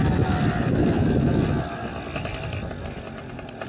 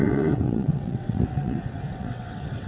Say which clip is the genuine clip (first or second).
first